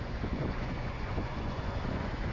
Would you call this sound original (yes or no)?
no